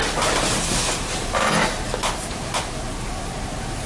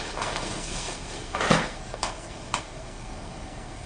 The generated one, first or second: second